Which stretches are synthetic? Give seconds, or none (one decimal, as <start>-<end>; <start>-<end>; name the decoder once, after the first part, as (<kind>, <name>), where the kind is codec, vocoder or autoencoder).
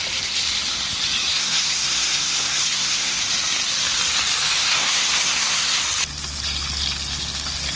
1.3-3.2 (codec, SNAC); 4.6-5.8